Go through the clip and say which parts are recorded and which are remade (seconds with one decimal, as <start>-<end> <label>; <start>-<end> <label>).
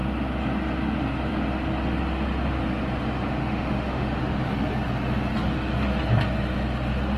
0.0-3.4 recorded; 3.4-4.2 remade; 4.2-7.2 recorded